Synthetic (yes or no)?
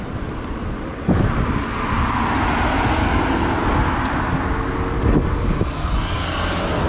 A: no